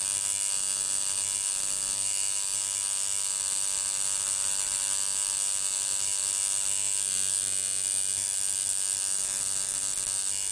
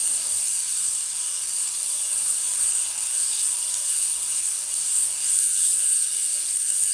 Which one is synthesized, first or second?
second